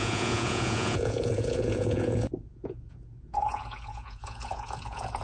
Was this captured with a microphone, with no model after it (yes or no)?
no